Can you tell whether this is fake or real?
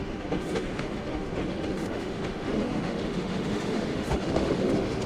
fake